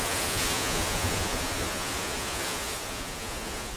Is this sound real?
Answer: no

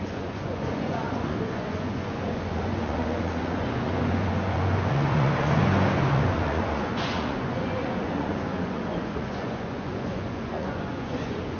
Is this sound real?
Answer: no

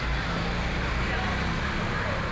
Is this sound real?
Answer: yes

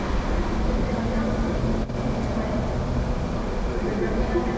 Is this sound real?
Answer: yes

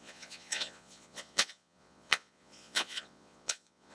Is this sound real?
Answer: no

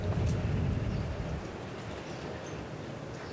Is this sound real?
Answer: yes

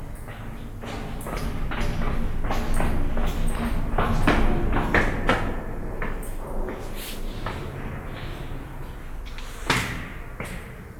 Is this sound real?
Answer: yes